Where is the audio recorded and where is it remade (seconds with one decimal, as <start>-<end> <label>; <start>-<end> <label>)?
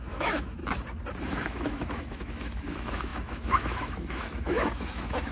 0.0-0.6 remade; 0.6-1.2 recorded; 1.2-5.3 remade